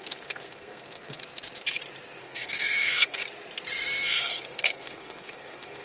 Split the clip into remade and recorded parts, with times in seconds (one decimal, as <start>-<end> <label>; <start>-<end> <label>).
0.0-1.2 remade; 1.2-2.2 recorded; 2.2-3.2 remade; 3.2-4.1 recorded; 4.1-5.8 remade